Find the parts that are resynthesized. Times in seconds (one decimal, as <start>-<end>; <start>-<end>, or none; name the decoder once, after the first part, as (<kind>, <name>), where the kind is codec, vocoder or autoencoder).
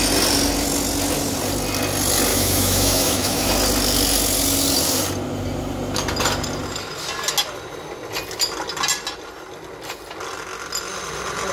2.3-3.5 (autoencoder, DAC-VAE)